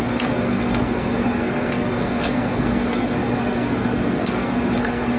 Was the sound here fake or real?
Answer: fake